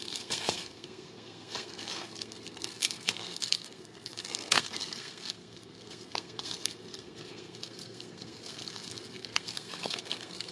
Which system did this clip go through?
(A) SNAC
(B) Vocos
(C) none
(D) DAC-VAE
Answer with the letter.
A